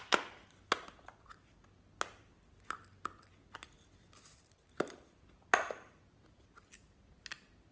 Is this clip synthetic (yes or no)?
no